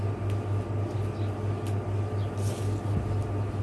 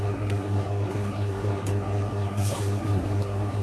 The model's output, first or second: second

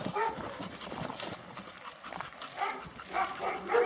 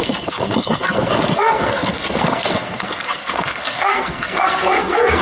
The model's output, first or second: second